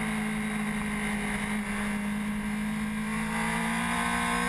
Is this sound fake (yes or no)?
no